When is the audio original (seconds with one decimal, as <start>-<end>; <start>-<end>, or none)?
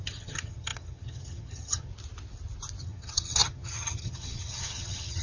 1.9-2.8